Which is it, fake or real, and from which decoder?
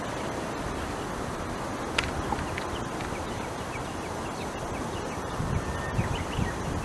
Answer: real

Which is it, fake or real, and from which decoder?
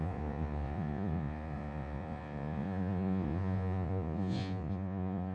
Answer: fake, vocoder, Vocos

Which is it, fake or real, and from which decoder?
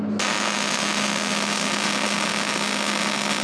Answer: real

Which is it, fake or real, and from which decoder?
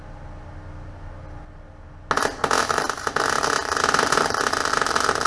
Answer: real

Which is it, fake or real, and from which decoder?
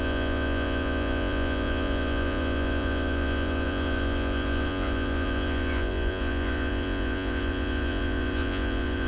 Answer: fake, vocoder, Vocos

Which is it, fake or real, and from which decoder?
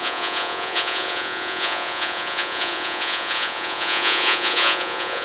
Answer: fake, vocoder, Vocos